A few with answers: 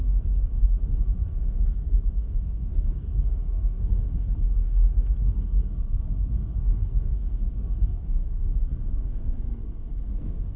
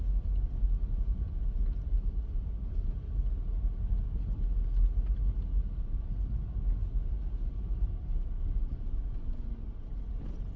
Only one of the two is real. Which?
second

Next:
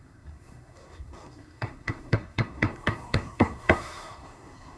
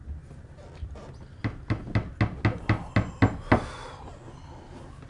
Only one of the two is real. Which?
second